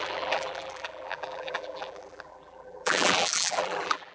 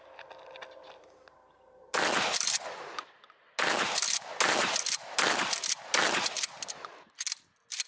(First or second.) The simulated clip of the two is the first